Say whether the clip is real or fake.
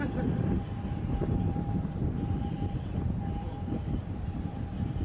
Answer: fake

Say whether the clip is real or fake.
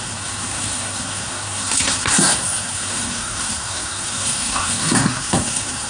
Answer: fake